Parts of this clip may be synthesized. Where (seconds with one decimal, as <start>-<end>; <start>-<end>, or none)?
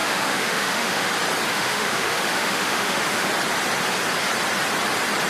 0.0-1.1; 1.5-3.3